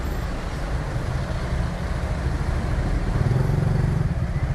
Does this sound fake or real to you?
real